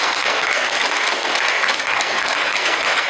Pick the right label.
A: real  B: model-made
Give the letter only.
B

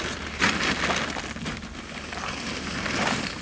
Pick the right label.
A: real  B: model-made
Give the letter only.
A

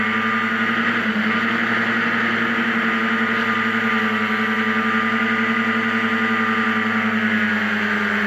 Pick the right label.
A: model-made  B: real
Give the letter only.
B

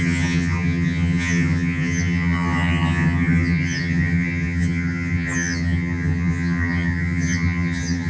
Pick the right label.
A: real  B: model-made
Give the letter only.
B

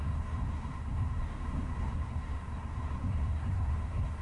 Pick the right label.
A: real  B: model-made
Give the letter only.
B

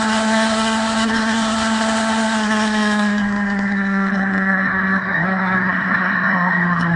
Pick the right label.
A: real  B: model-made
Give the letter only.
B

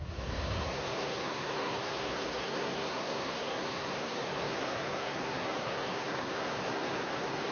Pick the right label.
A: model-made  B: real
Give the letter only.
A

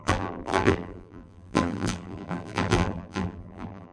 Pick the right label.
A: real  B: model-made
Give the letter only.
B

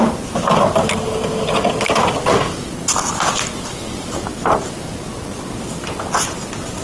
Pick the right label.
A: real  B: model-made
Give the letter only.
A